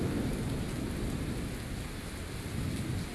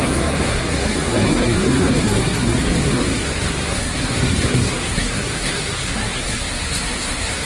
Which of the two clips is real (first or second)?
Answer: first